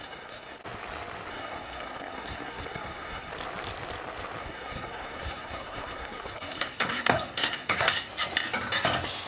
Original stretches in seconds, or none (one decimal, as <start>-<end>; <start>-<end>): 0.6-1.3; 3.3-4.4; 8.1-9.3